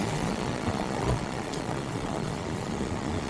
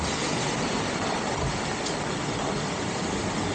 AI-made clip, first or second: first